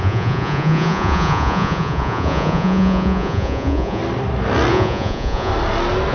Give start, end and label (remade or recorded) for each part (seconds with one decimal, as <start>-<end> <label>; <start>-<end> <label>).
0.0-4.0 remade; 4.0-4.7 recorded; 4.7-5.5 remade; 5.5-6.1 recorded

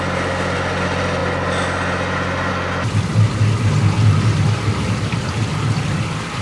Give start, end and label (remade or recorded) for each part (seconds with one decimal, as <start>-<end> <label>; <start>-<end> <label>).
0.0-6.4 recorded

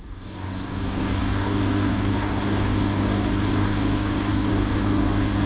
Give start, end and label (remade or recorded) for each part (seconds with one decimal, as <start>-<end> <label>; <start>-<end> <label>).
0.0-5.5 remade